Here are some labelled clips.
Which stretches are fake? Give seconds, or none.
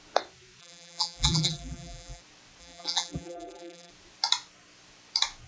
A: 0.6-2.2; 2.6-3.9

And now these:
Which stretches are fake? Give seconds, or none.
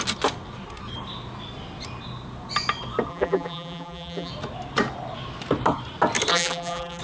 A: 3.1-4.3; 6.3-7.0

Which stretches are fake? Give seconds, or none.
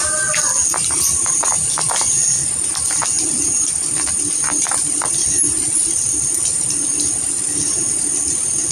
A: none